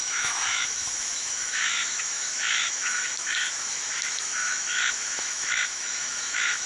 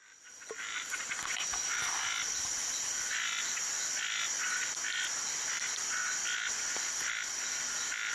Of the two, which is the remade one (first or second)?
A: first